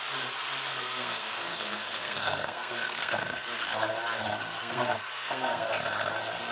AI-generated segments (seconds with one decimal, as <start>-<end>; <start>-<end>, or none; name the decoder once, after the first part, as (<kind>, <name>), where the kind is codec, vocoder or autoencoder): 0.7-3.9 (codec, SNAC); 4.6-5.7